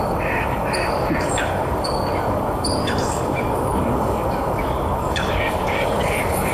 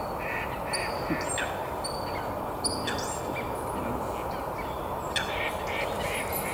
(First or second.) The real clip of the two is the second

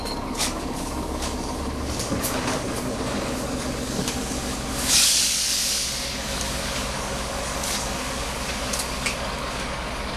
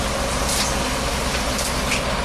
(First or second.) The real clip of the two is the second